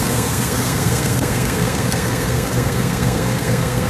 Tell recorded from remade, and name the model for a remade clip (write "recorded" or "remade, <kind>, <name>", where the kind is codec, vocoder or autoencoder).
remade, codec, SNAC